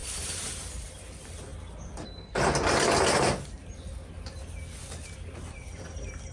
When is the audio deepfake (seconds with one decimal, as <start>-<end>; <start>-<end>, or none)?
0.0-0.6